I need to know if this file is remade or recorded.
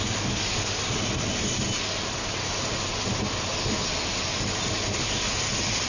recorded